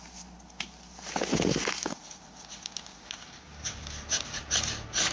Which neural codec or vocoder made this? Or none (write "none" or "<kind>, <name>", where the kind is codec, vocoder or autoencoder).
none